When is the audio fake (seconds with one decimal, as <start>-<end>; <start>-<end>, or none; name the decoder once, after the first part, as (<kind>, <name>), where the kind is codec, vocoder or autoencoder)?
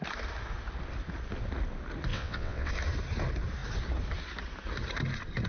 2.1-2.7 (vocoder, WaveNeXt)